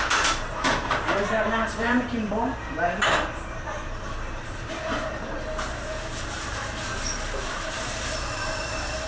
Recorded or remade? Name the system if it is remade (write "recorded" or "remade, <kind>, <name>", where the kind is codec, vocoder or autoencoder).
remade, vocoder, BigVGAN v2